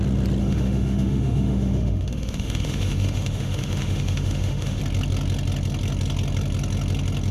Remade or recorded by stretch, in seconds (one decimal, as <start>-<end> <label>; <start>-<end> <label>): 0.0-0.4 recorded; 0.4-4.8 remade; 4.8-7.3 recorded